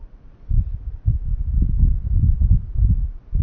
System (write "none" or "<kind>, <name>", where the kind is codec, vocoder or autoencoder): none